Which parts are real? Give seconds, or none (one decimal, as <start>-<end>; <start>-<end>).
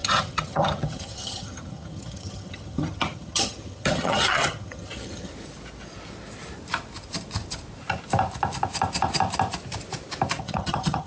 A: 5.3-10.4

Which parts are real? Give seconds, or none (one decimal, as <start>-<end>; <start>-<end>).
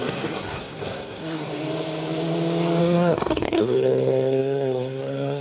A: 1.5-2.8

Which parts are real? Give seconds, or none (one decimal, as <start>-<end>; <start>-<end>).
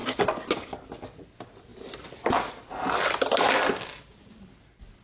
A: 0.0-5.0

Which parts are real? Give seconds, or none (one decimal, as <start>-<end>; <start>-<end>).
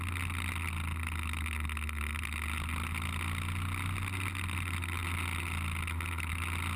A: 0.0-6.8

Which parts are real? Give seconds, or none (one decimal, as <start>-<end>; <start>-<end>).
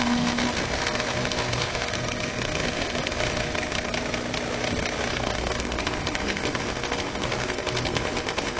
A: 3.9-5.1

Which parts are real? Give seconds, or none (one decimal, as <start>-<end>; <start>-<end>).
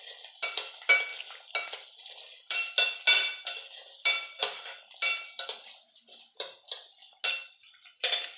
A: 0.0-8.4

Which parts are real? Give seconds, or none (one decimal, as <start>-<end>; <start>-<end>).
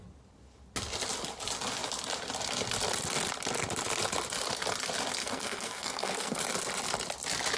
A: 0.0-5.2; 6.4-7.6